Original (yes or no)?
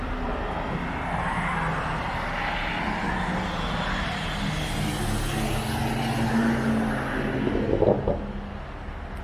yes